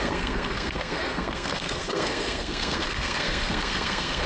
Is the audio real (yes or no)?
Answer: no